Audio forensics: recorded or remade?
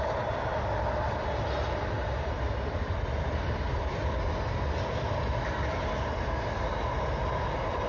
recorded